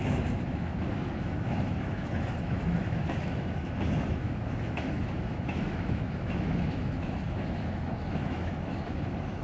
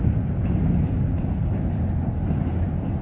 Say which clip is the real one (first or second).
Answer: second